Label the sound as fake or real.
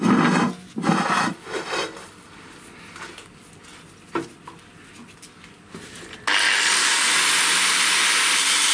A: real